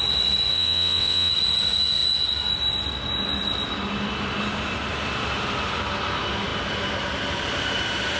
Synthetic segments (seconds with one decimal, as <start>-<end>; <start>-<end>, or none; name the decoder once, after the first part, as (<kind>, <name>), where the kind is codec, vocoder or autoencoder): 0.5-1.3 (vocoder, WaveNeXt)